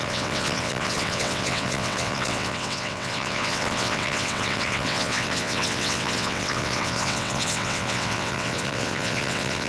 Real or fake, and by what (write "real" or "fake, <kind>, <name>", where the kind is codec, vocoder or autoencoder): fake, vocoder, WaveNeXt